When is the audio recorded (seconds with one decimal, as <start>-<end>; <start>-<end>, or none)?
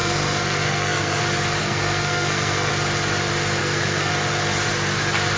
1.2-1.6; 2.7-3.6; 4.1-5.4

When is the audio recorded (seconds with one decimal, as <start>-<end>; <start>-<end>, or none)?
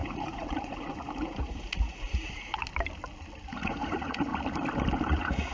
2.6-3.5; 4.3-5.1